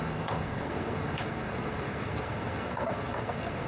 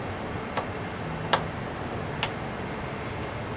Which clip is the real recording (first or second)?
second